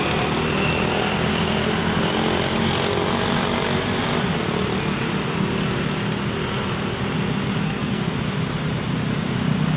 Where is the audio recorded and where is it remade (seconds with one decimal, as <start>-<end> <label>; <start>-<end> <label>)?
0.0-7.6 recorded; 7.6-8.1 remade; 8.1-9.8 recorded